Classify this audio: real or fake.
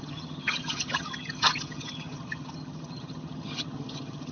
fake